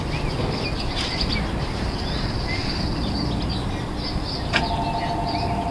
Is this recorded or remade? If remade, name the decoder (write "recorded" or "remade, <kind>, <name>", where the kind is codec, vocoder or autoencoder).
recorded